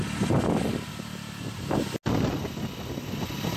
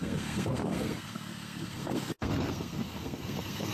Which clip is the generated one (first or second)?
second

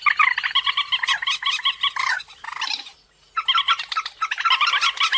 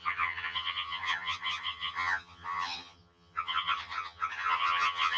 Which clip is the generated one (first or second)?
second